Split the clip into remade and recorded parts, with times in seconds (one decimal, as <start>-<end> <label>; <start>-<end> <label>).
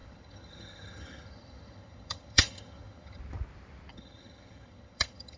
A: 0.0-3.2 remade; 3.2-3.9 recorded; 3.9-5.4 remade